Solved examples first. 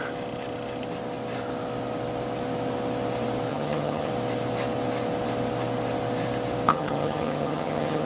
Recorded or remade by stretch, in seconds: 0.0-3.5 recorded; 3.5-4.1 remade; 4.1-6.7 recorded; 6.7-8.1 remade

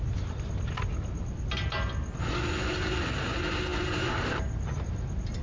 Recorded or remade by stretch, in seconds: 0.0-5.4 recorded

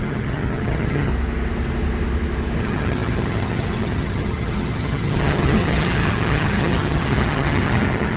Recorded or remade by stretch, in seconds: 0.0-1.1 remade; 1.1-2.6 recorded; 2.6-8.2 remade